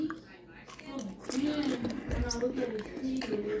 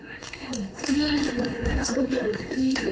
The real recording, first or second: first